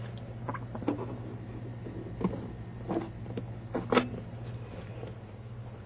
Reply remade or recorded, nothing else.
recorded